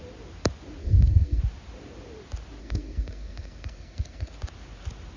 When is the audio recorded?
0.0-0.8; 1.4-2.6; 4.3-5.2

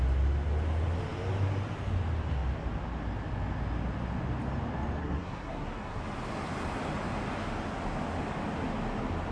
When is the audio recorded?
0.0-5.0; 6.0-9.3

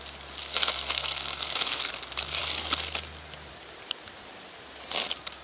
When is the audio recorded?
0.0-0.4; 1.9-5.4

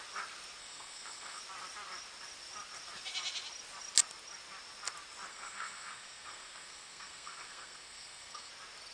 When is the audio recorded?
0.0-0.6; 1.4-5.3; 8.5-8.9

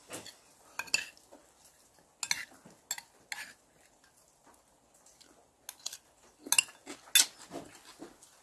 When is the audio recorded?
0.0-8.4

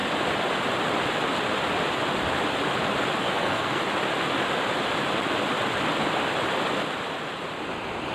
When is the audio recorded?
0.0-3.2; 3.8-8.1

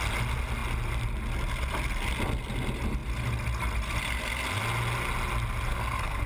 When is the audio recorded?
0.0-5.7